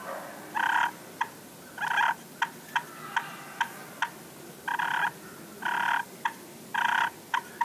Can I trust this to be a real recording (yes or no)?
yes